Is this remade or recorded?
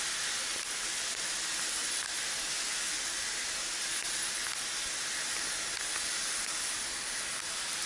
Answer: recorded